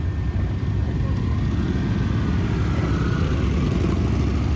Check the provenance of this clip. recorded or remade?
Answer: recorded